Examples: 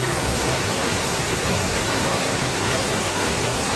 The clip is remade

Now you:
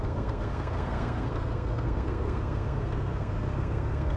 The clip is remade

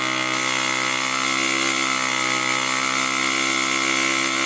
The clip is recorded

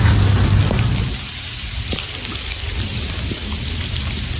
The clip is recorded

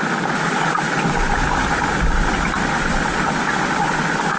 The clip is recorded